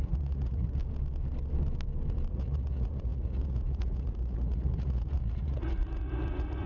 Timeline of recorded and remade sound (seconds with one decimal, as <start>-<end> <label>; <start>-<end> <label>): 0.0-0.8 remade; 0.8-2.3 recorded; 2.3-6.7 remade